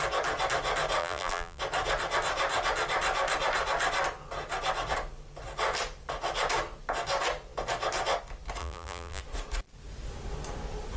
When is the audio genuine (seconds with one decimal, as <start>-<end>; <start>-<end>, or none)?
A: 0.0-1.0; 1.6-8.6; 9.2-11.0